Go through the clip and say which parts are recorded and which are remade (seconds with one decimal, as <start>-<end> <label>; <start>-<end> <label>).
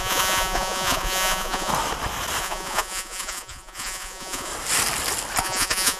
0.0-1.7 remade; 1.7-2.4 recorded; 2.4-4.5 remade; 4.5-5.4 recorded; 5.4-6.0 remade